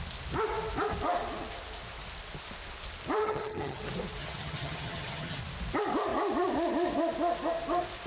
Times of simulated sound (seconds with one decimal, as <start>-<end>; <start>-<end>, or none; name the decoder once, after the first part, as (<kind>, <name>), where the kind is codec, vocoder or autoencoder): 3.2-3.8 (vocoder, HiFi-GAN); 4.2-5.4